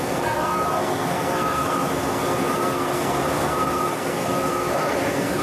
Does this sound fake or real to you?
fake